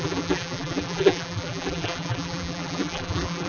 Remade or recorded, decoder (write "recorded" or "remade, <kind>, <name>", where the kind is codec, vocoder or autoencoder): remade, vocoder, BigVGAN v2